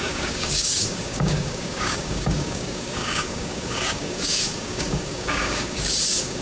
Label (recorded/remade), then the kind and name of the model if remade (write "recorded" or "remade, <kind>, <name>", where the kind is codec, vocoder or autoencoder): remade, codec, DAC